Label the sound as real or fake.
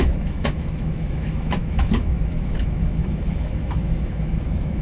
fake